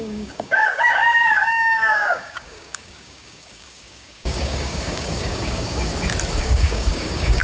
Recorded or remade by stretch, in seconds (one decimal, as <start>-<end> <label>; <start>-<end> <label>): 0.0-5.9 remade; 5.9-6.4 recorded; 6.4-7.4 remade